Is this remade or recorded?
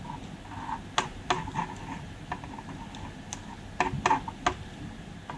recorded